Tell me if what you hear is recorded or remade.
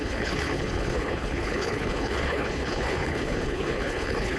remade